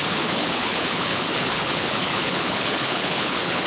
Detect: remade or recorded remade